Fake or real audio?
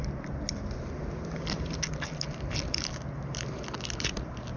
real